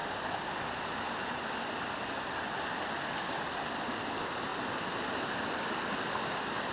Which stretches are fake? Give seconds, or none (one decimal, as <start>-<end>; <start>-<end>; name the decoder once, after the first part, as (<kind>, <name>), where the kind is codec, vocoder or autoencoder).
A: none